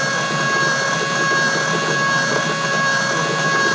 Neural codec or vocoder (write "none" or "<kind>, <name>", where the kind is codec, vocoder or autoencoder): none